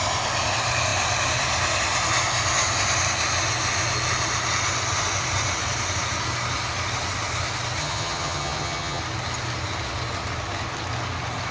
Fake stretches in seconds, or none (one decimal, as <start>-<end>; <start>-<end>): 7.8-9.0